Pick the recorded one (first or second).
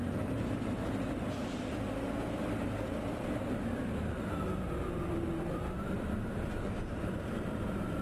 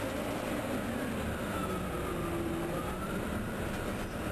second